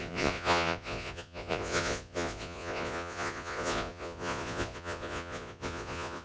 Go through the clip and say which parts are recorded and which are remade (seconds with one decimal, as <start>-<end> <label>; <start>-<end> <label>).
0.0-6.2 remade